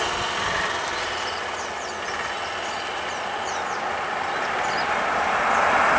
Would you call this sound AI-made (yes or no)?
no